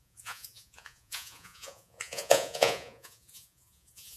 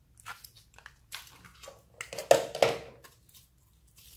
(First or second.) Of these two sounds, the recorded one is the second